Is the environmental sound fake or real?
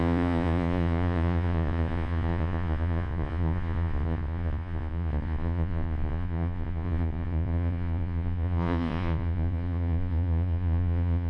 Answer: fake